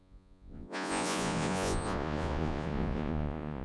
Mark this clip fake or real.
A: fake